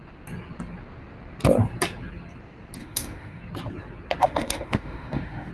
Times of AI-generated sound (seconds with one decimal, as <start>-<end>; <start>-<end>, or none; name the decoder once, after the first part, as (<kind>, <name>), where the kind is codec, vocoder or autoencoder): 2.8-3.4 (autoencoder, DAC-VAE); 4.2-5.5